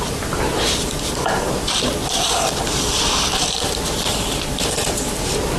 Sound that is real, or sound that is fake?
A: fake